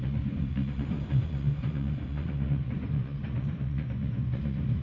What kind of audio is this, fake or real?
fake